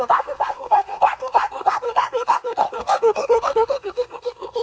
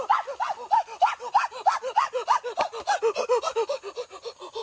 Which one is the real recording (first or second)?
second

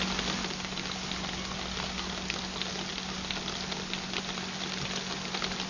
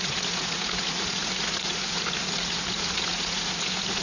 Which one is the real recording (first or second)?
first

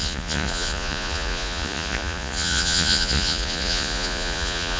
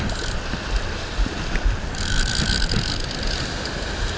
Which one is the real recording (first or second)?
second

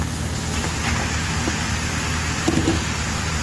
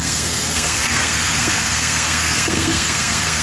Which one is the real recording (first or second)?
first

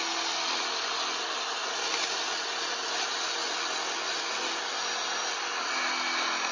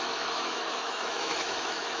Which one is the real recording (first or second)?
first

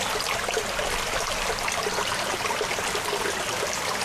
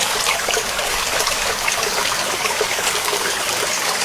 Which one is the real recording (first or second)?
first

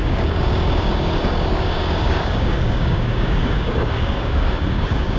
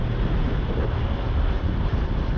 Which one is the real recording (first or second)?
second